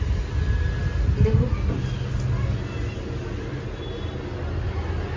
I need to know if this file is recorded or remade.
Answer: recorded